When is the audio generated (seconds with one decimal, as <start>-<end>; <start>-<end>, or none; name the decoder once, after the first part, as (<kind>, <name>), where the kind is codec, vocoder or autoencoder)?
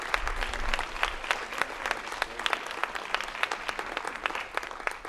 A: none